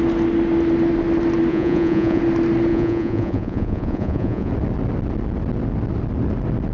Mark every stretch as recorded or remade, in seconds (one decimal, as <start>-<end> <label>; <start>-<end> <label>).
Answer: 0.0-1.5 recorded; 1.5-2.2 remade; 2.2-2.7 recorded; 2.7-4.5 remade; 4.5-6.7 recorded

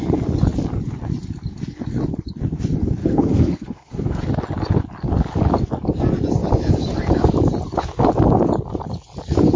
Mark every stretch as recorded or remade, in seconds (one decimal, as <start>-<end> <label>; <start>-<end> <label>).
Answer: 0.0-3.0 recorded; 3.0-4.2 remade; 4.2-9.6 recorded

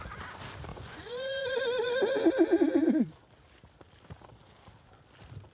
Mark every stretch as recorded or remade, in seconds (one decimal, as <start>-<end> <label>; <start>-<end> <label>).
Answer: 0.0-0.7 recorded; 0.7-2.3 remade; 2.3-5.5 recorded

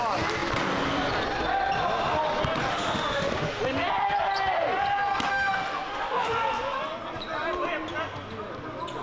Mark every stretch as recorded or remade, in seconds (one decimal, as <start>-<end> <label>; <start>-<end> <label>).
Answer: 0.0-2.7 recorded; 2.7-3.6 remade; 3.6-5.3 recorded; 5.3-6.3 remade; 6.3-9.0 recorded

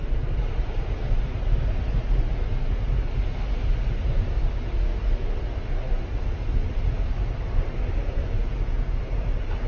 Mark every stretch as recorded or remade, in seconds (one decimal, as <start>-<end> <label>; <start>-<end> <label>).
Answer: 0.0-8.4 recorded; 8.4-9.0 remade; 9.0-9.7 recorded

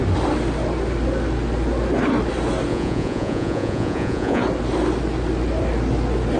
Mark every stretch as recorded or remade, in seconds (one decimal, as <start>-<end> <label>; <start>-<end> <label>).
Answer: 0.0-2.7 recorded; 2.7-4.4 remade; 4.4-6.4 recorded

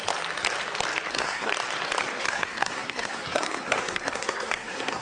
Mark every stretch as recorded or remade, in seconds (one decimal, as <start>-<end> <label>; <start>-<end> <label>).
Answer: 0.0-1.1 recorded; 1.1-1.5 remade; 1.5-2.2 recorded; 2.2-5.0 remade